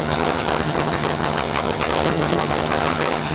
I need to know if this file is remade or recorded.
remade